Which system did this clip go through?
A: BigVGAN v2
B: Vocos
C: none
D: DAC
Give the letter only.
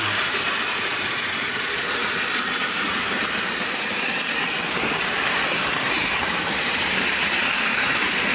A